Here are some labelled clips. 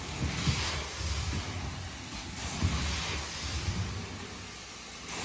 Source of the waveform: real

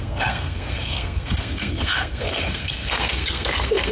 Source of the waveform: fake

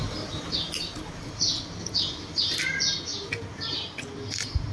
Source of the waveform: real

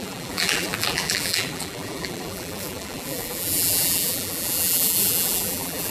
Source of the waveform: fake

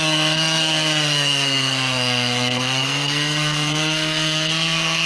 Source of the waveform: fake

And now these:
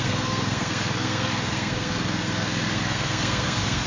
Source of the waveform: fake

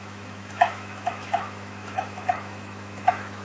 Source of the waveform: fake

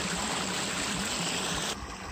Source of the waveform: real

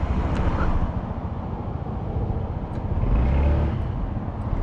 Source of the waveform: real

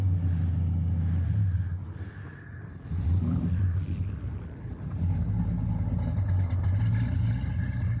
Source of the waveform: real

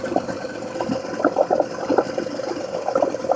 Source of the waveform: real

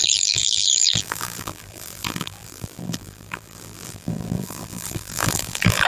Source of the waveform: fake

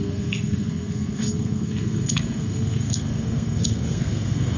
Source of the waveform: fake